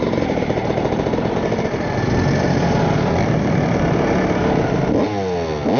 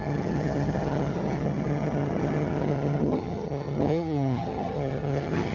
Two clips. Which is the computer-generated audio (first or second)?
second